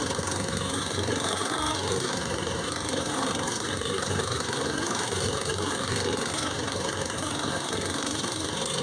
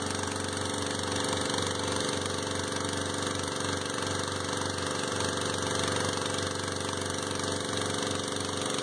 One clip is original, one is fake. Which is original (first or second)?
second